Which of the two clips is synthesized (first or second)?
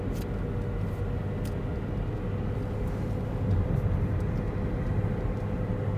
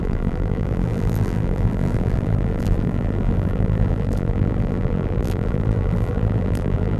second